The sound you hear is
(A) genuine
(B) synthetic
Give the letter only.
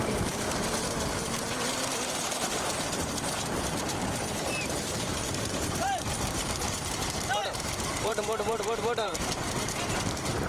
B